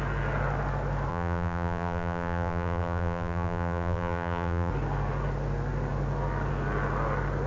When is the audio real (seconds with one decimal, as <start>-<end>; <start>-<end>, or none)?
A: 0.0-1.1; 4.7-7.5